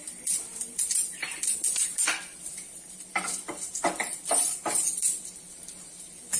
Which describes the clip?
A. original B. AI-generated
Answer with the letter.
B